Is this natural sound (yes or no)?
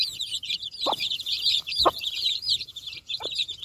no